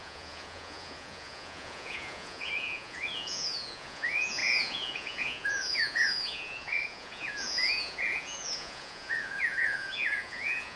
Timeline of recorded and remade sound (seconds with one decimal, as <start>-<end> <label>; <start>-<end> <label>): 0.0-10.8 remade